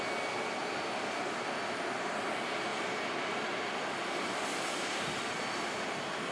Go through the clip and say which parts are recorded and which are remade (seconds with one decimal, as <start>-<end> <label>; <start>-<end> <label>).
0.0-2.7 recorded; 2.7-5.2 remade; 5.2-6.3 recorded